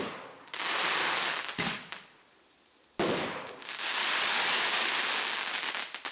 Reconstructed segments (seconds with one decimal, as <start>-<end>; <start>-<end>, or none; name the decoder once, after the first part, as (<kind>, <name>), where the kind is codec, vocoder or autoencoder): 1.0-1.6 (codec, DAC); 4.0-4.9